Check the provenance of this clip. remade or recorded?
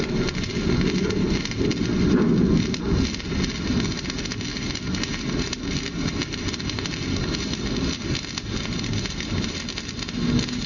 recorded